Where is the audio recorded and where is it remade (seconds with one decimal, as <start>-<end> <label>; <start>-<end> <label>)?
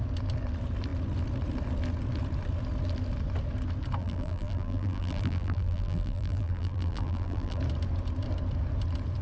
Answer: 0.0-4.0 recorded; 4.0-7.6 remade; 7.6-9.2 recorded